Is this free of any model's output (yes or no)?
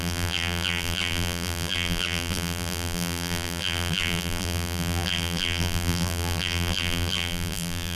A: no